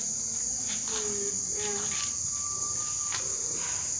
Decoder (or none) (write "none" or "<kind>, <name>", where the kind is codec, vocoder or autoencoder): none